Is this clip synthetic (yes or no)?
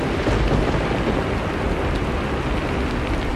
no